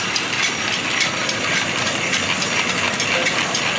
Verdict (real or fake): real